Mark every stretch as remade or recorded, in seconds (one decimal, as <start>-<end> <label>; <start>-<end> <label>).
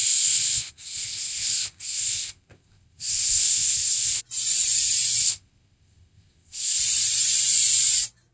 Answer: 0.0-4.2 remade; 4.2-5.2 recorded; 5.2-6.8 remade; 6.8-8.3 recorded